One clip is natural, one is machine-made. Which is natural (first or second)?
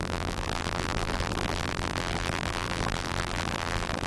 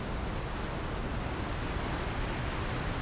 second